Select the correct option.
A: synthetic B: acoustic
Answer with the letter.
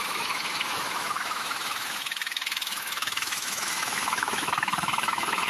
A